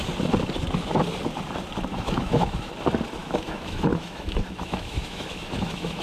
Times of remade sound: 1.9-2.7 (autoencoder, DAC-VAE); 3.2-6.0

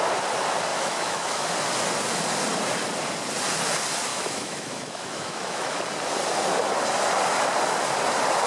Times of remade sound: 0.7-1.5 (autoencoder, DAC-VAE); 4.1-5.8

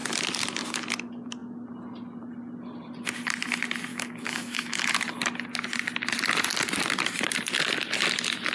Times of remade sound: 3.9-4.8 (autoencoder, DAC-VAE)

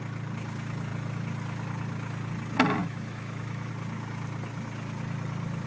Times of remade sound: 2.8-3.7 (autoencoder, DAC-VAE)

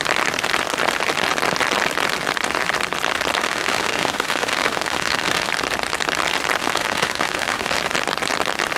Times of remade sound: 3.4-5.5 (autoencoder, DAC-VAE); 6.6-7.8

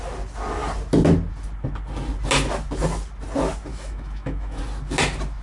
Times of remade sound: 3.7-4.6 (autoencoder, DAC-VAE)

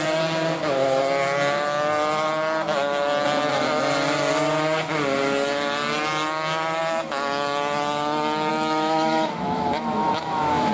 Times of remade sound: 8.5-10.7 (autoencoder, DAC-VAE)

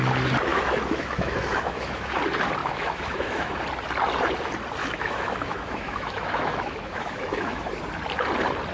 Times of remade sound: 0.5-2.2 (autoencoder, DAC-VAE); 2.6-3.6; 4.8-7.7